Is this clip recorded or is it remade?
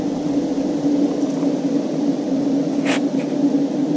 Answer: recorded